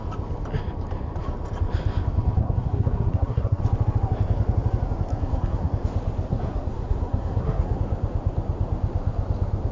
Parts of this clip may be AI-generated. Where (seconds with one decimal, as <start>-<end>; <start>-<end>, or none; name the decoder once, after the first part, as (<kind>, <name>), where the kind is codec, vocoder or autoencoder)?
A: 2.4-3.6 (codec, SNAC); 5.1-5.7; 6.3-7.8